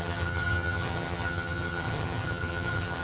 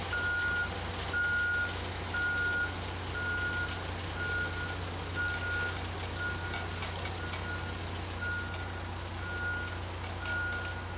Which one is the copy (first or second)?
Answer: first